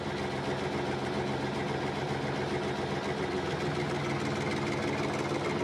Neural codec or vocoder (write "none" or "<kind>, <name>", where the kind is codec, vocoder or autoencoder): none